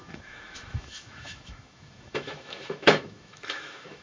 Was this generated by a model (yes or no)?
yes